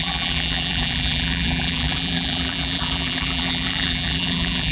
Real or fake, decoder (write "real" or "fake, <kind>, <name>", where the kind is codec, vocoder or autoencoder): fake, vocoder, BigVGAN v2